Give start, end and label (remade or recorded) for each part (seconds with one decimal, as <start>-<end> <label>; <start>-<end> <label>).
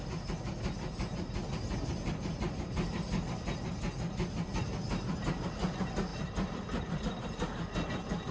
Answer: 0.0-6.1 recorded; 6.1-7.0 remade; 7.0-8.3 recorded